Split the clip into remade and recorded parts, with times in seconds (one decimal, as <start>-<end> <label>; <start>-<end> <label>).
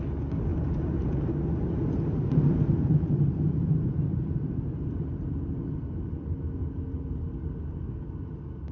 0.0-0.5 recorded; 0.5-5.7 remade; 5.7-6.6 recorded; 6.6-7.3 remade; 7.3-8.7 recorded